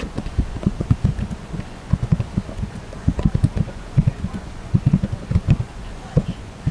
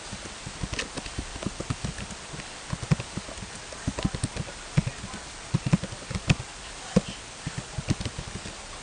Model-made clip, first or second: first